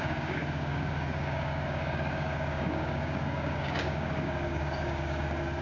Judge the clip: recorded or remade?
remade